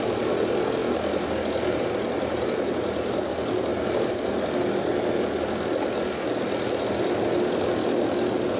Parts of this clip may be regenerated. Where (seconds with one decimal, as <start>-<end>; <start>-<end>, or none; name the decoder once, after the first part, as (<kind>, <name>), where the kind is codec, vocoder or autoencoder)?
none